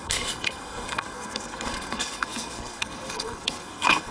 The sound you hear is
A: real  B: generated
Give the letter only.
B